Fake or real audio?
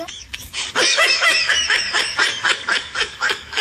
fake